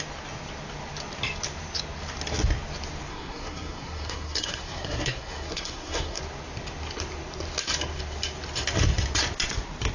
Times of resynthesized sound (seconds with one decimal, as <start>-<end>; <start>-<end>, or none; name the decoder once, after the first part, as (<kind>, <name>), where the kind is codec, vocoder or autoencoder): 3.1-6.2 (codec, SNAC)